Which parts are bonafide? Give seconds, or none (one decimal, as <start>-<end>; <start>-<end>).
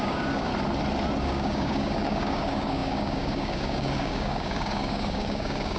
0.5-1.2